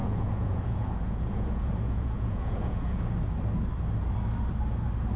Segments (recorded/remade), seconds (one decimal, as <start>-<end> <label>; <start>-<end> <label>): 0.0-3.1 remade; 3.1-5.2 recorded